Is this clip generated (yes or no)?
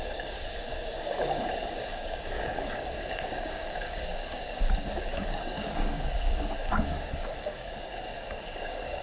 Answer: yes